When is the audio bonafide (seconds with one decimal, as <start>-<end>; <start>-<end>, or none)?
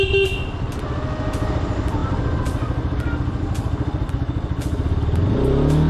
0.0-5.9